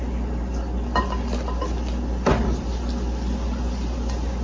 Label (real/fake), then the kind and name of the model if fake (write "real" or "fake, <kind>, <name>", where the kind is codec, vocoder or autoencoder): real